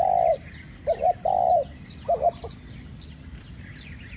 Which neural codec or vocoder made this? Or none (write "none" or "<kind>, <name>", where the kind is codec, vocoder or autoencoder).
vocoder, BigVGAN v2